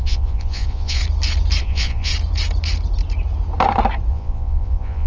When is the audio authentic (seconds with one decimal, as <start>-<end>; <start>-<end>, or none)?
1.0-1.6; 2.1-4.1